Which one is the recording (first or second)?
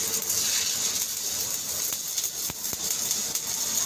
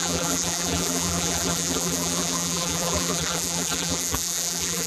first